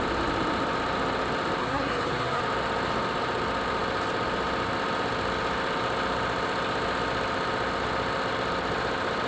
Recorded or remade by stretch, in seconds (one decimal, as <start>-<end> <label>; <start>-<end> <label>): 0.0-1.6 recorded; 1.6-2.4 remade; 2.4-9.3 recorded